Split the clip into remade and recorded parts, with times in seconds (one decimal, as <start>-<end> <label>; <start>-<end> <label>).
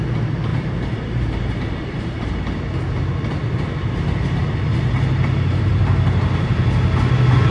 0.0-0.5 recorded; 0.5-2.3 remade; 2.3-7.5 recorded